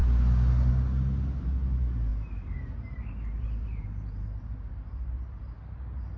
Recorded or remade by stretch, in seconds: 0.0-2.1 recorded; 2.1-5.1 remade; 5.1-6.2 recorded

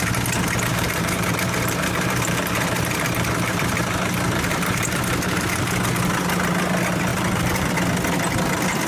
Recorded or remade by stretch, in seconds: 0.0-0.7 recorded; 0.7-5.8 remade; 5.8-7.1 recorded; 7.1-7.7 remade; 7.7-8.9 recorded

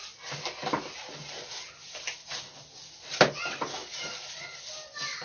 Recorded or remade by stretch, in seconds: 0.0-5.2 recorded

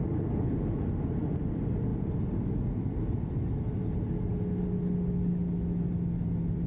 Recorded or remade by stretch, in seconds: 0.0-6.7 recorded

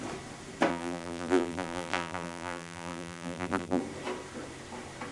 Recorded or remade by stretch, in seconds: 0.0-0.7 recorded; 0.7-3.8 remade; 3.8-5.1 recorded

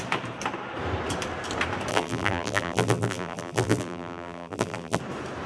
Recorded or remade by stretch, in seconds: 0.0-1.9 recorded; 1.9-5.0 remade; 5.0-5.5 recorded